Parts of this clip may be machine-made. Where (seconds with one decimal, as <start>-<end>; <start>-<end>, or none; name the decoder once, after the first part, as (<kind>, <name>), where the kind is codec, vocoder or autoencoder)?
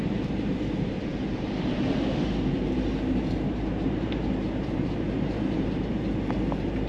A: 0.0-6.9 (vocoder, BigVGAN v2)